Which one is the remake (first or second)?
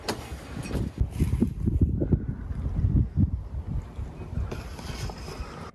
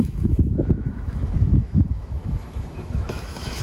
second